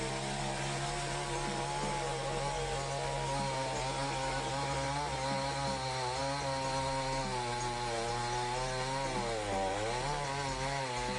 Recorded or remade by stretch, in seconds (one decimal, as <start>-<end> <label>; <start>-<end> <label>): 0.0-11.2 recorded

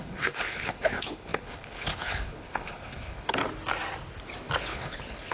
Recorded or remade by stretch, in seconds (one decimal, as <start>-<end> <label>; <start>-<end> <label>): 0.0-3.4 remade; 3.4-4.6 recorded; 4.6-5.3 remade